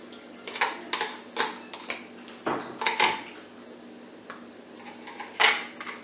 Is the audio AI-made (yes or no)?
no